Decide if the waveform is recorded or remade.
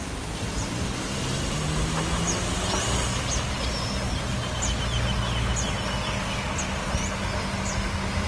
recorded